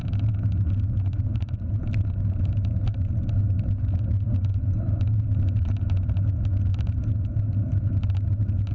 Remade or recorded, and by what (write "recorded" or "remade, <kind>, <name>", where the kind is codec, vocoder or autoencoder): recorded